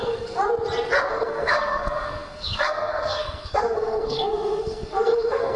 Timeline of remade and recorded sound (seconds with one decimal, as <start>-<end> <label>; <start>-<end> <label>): 0.0-0.4 remade; 0.4-1.1 recorded; 1.1-5.6 remade